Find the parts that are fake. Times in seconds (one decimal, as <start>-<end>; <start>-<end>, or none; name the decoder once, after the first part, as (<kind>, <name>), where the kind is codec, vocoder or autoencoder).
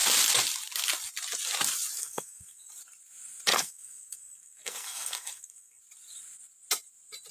2.0-2.7 (codec, SNAC); 3.5-5.8